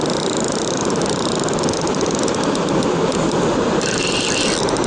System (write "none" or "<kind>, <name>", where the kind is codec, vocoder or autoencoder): none